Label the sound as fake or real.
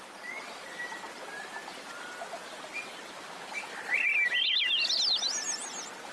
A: real